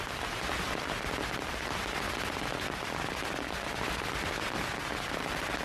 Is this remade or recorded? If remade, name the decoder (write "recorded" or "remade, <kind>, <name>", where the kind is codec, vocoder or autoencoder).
recorded